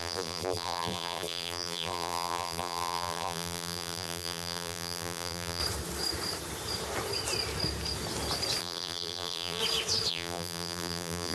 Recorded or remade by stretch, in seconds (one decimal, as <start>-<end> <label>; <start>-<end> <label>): 0.0-5.6 remade; 5.6-8.6 recorded; 8.6-9.6 remade; 9.6-10.1 recorded; 10.1-11.3 remade